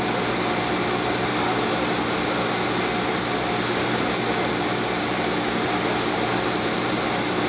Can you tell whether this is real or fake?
real